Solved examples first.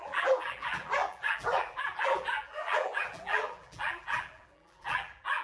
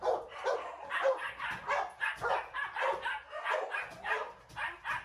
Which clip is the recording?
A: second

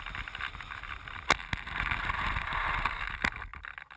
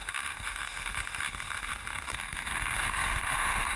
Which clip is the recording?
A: first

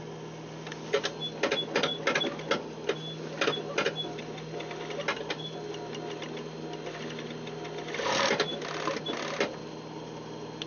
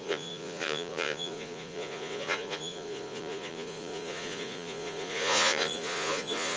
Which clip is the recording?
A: first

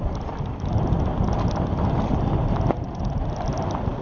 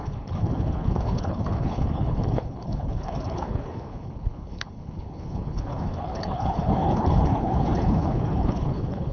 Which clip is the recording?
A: first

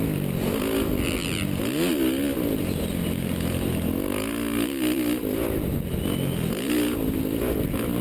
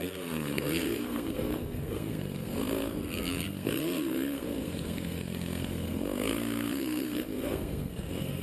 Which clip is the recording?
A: first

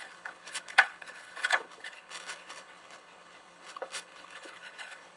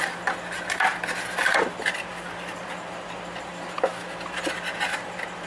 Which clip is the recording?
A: second